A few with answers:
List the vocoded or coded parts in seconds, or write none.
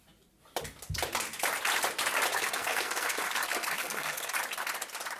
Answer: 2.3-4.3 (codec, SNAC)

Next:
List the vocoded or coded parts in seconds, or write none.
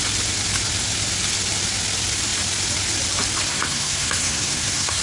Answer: 3.5-5.0 (codec, SNAC)